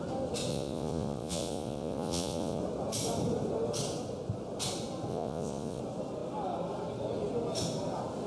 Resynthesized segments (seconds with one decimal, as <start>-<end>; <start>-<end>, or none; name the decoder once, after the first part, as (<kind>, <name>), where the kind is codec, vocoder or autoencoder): 0.5-2.6 (vocoder, Vocos); 5.1-5.8